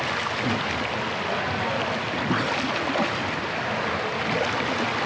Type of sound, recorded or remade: recorded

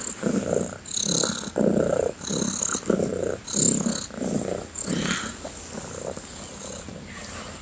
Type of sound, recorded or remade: recorded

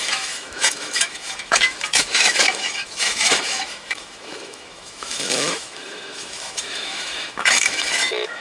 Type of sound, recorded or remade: remade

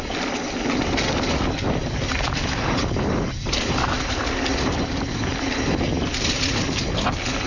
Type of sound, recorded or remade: recorded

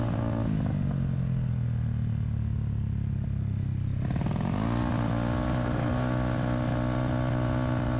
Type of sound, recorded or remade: recorded